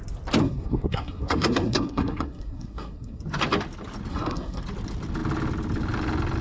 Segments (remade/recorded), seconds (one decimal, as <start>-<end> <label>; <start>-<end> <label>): 0.0-0.4 recorded; 0.4-3.2 remade; 3.2-4.1 recorded; 4.1-4.6 remade; 4.6-6.4 recorded